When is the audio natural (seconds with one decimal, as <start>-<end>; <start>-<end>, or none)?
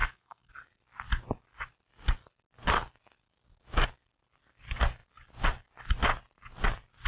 0.5-7.1